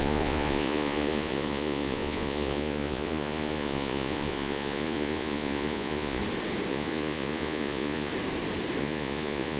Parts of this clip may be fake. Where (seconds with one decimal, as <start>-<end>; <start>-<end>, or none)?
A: 0.0-6.2; 6.7-8.1; 8.8-9.6